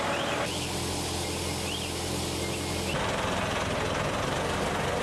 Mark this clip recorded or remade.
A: recorded